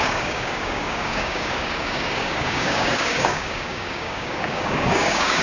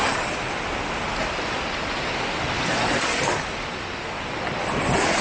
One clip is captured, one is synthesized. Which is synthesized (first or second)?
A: first